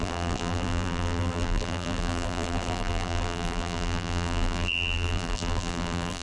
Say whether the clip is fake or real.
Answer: fake